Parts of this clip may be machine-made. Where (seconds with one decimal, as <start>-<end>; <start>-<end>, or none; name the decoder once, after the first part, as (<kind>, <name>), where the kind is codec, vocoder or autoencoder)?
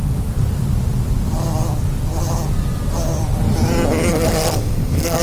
4.1-5.2 (codec, SNAC)